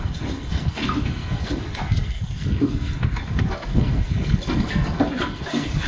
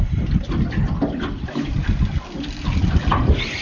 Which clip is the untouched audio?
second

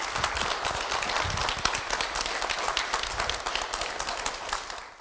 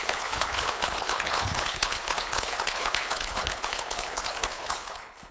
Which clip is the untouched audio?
first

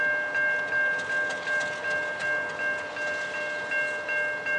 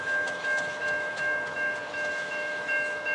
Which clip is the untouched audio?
first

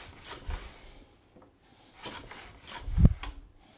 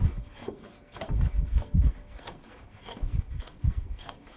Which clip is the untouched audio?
first